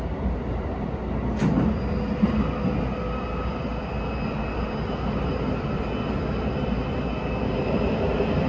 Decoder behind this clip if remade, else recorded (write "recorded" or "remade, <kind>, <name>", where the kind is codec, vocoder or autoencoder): recorded